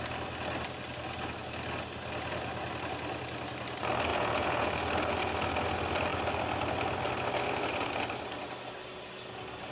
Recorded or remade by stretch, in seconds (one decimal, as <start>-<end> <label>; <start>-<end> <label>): 0.0-4.1 recorded; 4.1-4.7 remade; 4.7-9.7 recorded